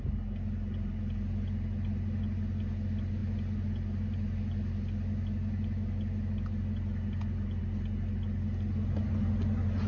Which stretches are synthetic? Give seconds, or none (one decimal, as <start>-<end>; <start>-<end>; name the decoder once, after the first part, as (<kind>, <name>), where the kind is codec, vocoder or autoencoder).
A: none